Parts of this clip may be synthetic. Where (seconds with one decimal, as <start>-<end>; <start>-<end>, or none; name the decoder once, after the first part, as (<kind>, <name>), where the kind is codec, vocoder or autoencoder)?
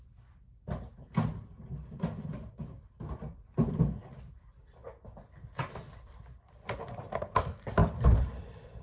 none